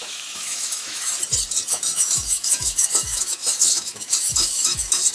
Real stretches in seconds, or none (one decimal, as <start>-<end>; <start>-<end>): 1.1-1.7